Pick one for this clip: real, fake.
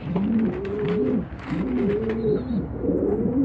real